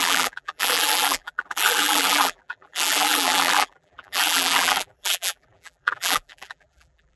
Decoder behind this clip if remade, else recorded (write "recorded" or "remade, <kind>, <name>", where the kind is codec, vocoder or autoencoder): remade, vocoder, BigVGAN v2